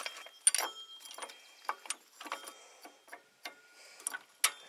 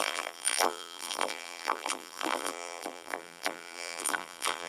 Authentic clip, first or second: first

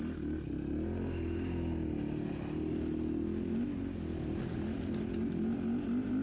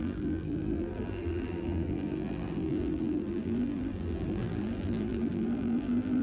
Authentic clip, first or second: first